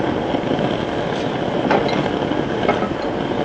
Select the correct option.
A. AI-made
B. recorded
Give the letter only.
B